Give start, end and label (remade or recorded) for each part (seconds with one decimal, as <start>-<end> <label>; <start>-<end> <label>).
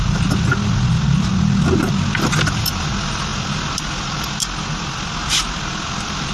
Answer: 0.0-6.3 recorded